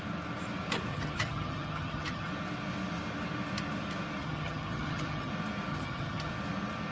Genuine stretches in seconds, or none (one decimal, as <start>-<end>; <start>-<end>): 0.0-0.9; 2.3-4.2; 5.3-5.7; 6.3-6.9